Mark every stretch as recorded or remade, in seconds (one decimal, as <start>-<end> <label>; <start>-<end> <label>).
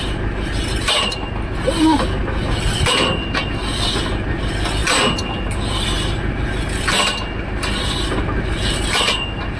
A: 0.0-9.6 recorded